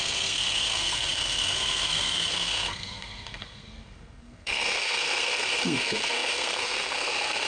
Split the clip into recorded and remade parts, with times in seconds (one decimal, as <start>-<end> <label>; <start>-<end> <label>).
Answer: 0.0-7.5 remade